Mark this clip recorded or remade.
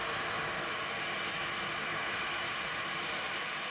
recorded